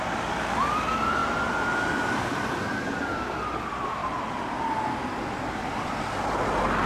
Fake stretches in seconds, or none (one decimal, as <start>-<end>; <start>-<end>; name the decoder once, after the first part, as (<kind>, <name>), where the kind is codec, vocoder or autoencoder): 1.2-2.6 (vocoder, BigVGAN v2); 4.0-5.9